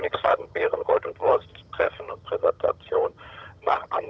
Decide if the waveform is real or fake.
fake